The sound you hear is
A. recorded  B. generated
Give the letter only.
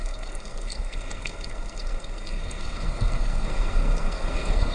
B